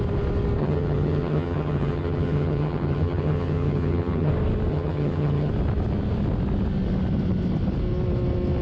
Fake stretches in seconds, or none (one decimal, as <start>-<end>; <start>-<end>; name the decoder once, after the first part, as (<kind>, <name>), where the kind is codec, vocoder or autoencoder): 0.6-4.3 (vocoder, HiFi-GAN); 4.7-5.5